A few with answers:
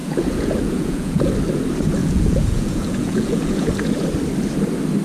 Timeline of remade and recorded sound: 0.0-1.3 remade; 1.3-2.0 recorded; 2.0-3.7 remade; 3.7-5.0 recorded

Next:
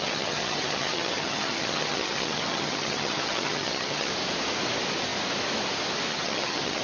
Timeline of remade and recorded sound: 0.0-4.1 remade; 4.1-6.1 recorded; 6.1-6.8 remade

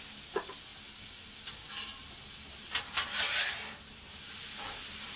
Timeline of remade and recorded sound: 0.0-2.0 recorded; 2.0-5.2 remade

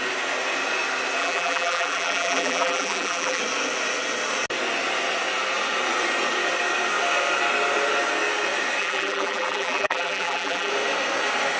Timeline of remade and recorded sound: 0.0-1.2 recorded; 1.2-3.4 remade; 3.4-8.8 recorded; 8.8-10.7 remade; 10.7-11.6 recorded